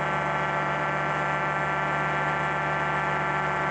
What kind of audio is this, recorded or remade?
recorded